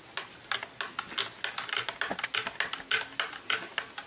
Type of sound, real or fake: real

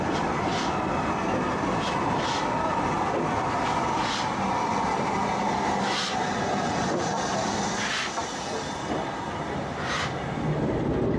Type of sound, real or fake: real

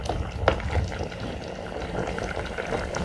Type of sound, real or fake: real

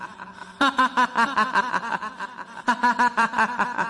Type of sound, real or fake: real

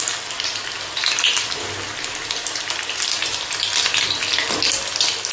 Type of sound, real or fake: real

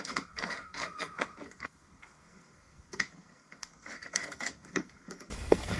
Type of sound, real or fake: fake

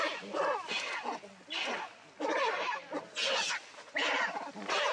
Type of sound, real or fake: real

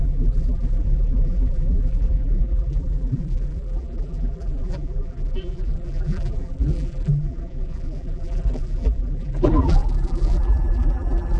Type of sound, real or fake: fake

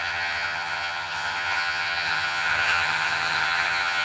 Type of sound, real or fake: fake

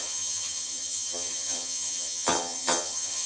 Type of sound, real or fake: fake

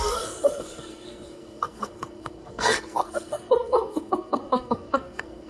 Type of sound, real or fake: fake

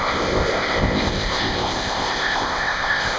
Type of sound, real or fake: fake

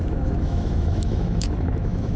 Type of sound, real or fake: fake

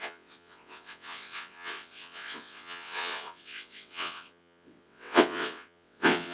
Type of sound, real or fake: fake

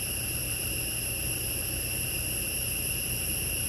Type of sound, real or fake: real